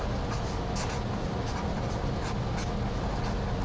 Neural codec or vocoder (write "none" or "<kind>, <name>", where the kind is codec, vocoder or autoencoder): none